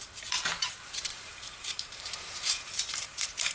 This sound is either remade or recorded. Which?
remade